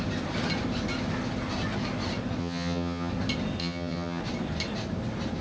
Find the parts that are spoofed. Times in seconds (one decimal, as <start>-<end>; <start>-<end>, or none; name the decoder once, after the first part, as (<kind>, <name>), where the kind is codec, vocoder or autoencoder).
2.4-3.1 (vocoder, HiFi-GAN); 3.6-4.2